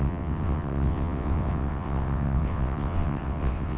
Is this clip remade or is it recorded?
remade